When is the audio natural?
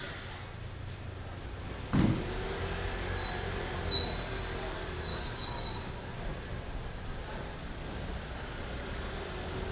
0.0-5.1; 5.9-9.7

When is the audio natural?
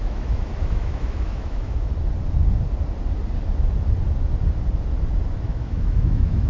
1.9-5.4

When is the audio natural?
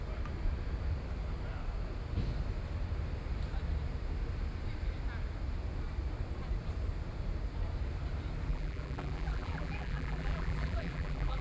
0.0-8.5